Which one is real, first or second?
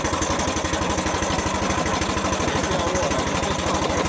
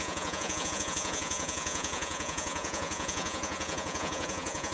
first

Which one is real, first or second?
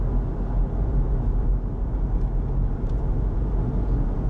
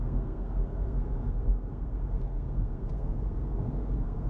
first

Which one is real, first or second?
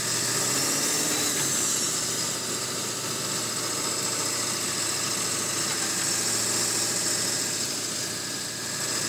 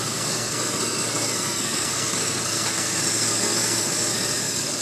first